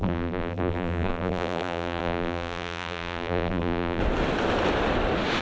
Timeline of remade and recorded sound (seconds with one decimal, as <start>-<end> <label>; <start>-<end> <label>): 0.0-4.0 remade; 4.0-5.4 recorded